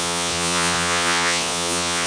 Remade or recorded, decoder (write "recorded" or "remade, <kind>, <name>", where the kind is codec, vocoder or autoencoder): remade, vocoder, Vocos